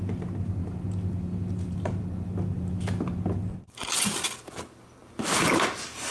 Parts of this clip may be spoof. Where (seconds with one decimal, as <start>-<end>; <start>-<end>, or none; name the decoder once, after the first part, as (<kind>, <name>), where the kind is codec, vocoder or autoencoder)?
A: none